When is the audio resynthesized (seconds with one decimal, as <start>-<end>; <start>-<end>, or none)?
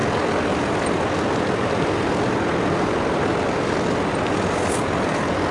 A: none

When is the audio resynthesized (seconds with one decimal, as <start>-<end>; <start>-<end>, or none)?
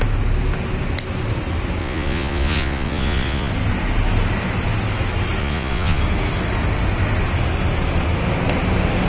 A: 1.8-3.5; 5.4-6.0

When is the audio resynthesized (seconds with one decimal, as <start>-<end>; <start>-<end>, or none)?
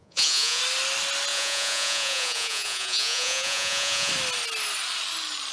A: 0.0-0.6; 1.3-4.1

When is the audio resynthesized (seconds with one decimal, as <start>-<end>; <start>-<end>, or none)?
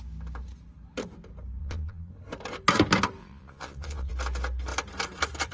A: 1.6-2.1; 3.2-4.1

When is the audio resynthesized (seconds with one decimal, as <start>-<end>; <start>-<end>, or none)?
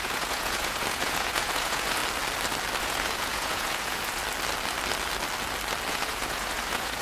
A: 0.0-2.0; 2.8-4.2; 5.9-7.0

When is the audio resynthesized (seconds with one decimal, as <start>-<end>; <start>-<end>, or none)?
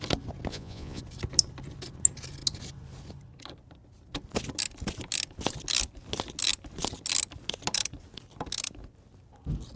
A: 0.5-1.0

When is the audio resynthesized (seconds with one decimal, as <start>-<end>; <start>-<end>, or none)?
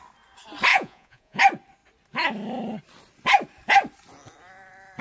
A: 0.7-1.4